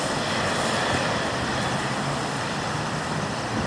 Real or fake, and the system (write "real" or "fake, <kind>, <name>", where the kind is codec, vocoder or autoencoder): real